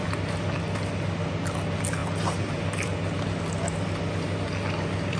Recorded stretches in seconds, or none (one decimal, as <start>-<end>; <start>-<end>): 0.0-5.2